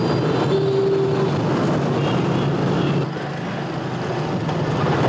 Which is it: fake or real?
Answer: real